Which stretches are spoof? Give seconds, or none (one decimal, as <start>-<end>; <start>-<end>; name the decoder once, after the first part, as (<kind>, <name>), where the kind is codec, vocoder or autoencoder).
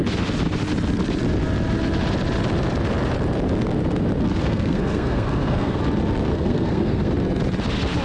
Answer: 4.4-5.8 (codec, SNAC); 6.3-7.1